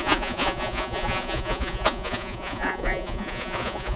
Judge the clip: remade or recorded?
remade